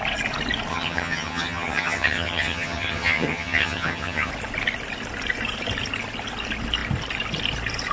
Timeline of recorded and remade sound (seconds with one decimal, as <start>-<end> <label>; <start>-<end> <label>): 0.0-0.7 recorded; 0.7-4.3 remade; 4.3-7.9 recorded